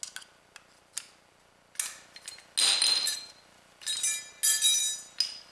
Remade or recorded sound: recorded